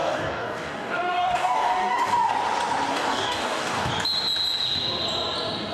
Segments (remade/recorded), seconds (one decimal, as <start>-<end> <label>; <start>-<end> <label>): 0.0-2.3 remade; 2.3-2.9 recorded; 2.9-3.9 remade; 3.9-5.7 recorded